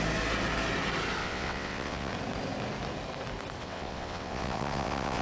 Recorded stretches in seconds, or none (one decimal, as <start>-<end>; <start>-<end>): 0.0-1.2; 2.1-3.6